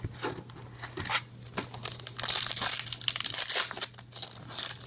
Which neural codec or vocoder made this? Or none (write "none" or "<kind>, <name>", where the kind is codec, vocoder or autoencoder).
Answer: none